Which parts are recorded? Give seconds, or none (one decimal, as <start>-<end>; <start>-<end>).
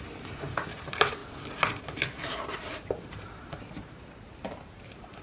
1.2-1.8